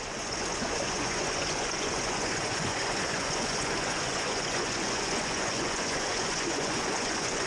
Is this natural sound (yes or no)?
no